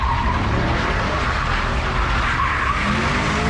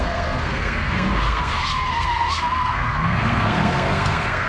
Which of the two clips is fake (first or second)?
second